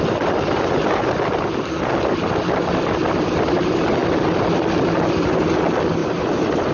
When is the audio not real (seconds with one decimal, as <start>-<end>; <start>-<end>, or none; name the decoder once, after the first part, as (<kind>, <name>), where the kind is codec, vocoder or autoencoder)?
6.0-6.7 (vocoder, BigVGAN v2)